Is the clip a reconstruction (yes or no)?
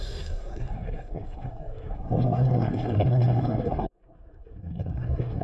yes